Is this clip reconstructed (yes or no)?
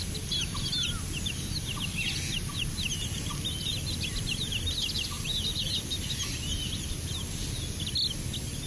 no